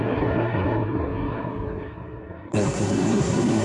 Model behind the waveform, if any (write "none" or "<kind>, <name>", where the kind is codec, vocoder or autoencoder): codec, SNAC